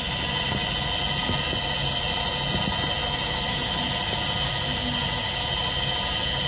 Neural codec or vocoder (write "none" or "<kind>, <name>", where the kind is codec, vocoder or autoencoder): none